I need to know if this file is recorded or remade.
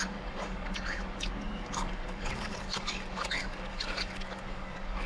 remade